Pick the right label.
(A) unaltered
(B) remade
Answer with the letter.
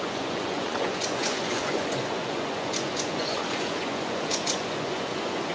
B